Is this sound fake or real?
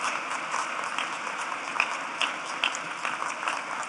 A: real